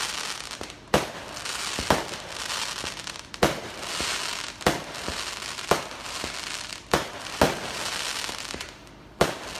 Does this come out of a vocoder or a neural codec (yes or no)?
no